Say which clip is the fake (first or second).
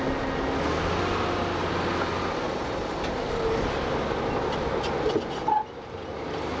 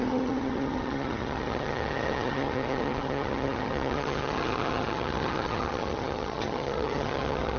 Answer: second